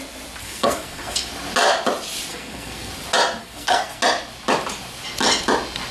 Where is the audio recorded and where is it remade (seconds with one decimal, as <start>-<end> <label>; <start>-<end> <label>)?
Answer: 0.0-0.4 recorded; 0.4-1.3 remade; 1.3-2.3 recorded; 2.3-2.9 remade; 2.9-3.4 recorded; 3.4-4.0 remade; 4.0-5.9 recorded

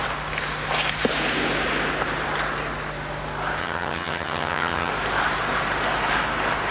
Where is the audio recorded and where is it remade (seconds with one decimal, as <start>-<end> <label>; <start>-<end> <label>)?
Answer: 0.0-3.6 recorded; 3.6-4.9 remade; 4.9-6.7 recorded

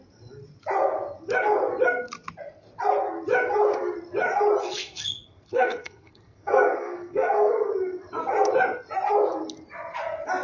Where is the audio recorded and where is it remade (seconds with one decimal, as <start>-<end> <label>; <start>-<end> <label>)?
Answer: 0.0-4.6 recorded; 4.6-7.7 remade; 7.7-10.4 recorded

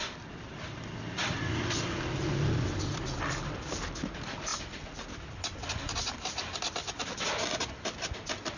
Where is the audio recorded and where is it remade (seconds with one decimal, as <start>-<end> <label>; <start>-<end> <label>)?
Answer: 0.0-8.6 recorded